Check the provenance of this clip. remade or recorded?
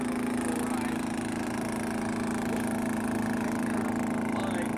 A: recorded